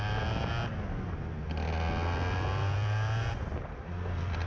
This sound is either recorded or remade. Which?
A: recorded